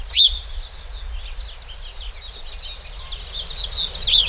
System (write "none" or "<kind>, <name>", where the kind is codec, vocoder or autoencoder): none